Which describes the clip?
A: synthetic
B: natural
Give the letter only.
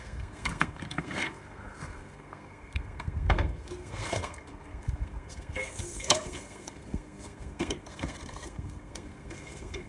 A